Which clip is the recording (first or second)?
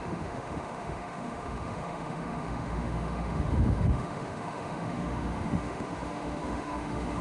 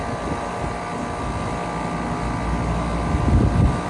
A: second